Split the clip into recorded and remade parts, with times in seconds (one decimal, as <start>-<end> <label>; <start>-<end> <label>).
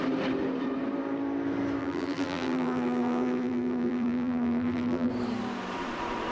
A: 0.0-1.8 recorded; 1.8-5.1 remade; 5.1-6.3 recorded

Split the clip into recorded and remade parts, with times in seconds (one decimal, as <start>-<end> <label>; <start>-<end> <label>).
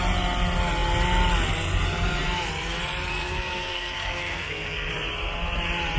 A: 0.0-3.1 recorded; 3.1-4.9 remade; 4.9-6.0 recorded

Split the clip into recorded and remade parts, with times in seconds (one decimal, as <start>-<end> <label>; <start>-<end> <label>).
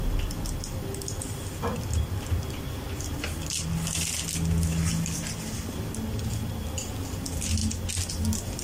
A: 0.0-8.6 recorded